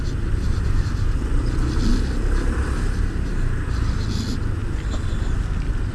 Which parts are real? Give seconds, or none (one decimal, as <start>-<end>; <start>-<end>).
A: 0.0-5.9